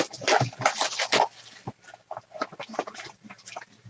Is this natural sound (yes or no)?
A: yes